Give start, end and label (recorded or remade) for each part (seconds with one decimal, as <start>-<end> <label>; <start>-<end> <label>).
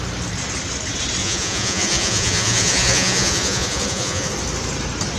0.0-1.2 recorded; 1.2-4.3 remade; 4.3-5.2 recorded